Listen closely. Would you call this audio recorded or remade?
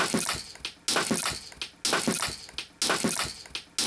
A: recorded